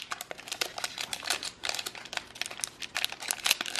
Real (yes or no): yes